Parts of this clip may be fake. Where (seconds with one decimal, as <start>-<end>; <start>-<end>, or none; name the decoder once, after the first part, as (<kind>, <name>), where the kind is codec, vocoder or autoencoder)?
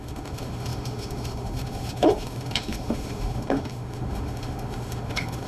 0.0-5.5 (autoencoder, DAC-VAE)